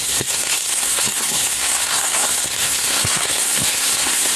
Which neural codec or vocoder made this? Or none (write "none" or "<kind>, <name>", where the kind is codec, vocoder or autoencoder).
codec, SNAC